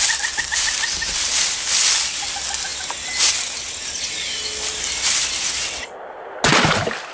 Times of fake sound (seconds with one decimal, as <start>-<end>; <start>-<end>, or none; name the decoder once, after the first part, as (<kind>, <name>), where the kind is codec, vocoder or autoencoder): none